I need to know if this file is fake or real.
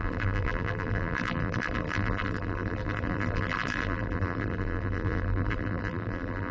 fake